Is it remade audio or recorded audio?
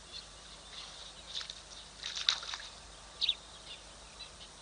recorded